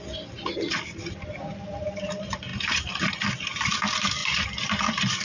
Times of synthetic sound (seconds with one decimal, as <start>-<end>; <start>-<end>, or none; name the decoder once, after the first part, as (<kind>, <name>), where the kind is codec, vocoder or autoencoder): none

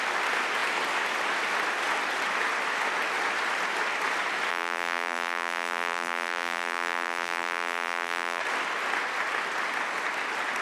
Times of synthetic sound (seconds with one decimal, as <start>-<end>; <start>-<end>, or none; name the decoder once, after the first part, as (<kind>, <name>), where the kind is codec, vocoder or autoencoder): 4.5-8.4 (vocoder, BigVGAN v2)

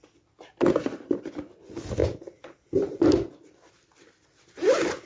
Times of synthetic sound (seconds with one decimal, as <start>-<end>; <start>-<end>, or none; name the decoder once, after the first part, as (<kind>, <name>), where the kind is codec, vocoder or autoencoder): 2.0-3.3 (vocoder, BigVGAN v2)